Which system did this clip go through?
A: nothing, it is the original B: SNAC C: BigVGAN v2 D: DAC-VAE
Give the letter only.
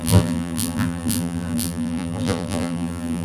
C